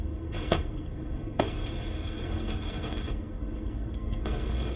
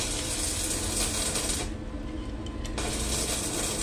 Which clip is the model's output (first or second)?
first